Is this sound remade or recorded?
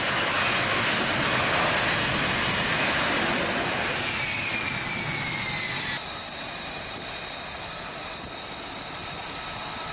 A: recorded